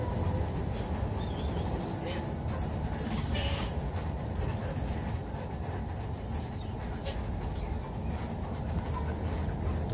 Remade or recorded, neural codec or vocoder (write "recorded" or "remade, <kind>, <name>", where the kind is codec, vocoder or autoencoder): recorded